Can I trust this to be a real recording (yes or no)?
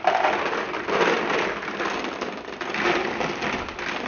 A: yes